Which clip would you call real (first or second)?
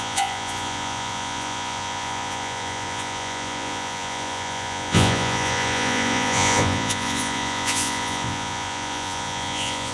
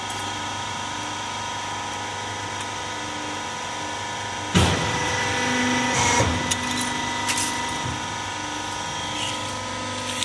second